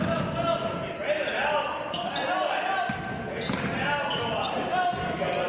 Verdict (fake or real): real